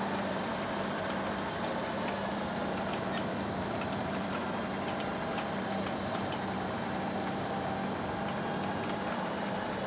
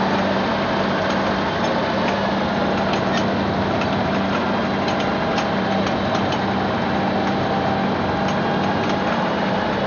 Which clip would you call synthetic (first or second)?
first